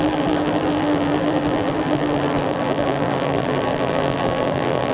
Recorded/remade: remade